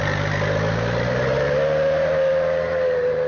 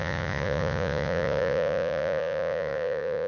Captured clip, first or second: first